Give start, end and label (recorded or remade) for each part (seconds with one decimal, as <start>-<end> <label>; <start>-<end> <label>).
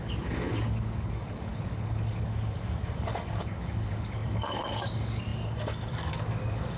0.0-6.8 remade